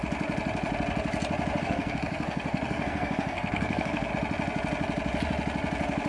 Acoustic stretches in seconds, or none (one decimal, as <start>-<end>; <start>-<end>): 0.0-1.6; 4.1-6.1